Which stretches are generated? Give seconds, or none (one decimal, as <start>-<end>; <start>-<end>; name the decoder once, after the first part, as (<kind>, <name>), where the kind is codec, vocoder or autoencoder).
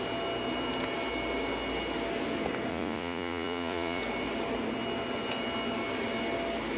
2.7-4.0 (vocoder, Vocos)